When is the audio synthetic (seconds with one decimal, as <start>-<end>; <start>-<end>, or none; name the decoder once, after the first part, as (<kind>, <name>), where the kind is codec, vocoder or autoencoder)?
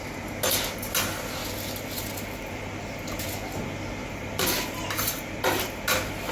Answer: none